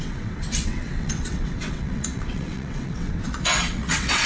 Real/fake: fake